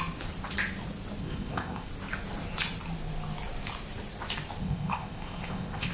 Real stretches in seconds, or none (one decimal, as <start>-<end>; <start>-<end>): 0.0-1.2; 1.9-4.6